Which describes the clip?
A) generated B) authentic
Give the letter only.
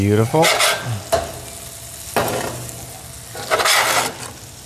B